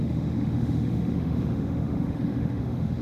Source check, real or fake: fake